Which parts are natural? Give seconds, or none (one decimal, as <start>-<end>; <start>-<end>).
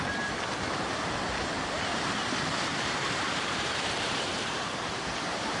0.0-2.7